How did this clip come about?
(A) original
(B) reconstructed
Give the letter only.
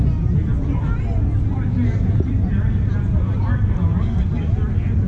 A